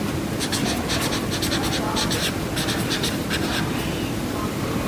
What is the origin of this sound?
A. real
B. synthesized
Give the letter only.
A